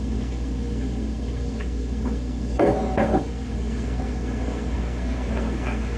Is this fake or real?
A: fake